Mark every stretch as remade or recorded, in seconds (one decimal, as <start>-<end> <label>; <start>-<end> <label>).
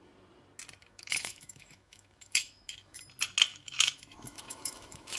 0.0-0.8 recorded; 0.8-3.0 remade; 3.0-3.5 recorded; 3.5-5.2 remade